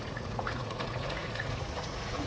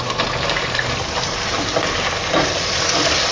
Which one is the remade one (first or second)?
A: first